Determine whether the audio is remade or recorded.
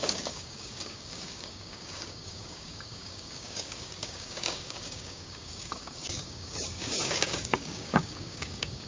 remade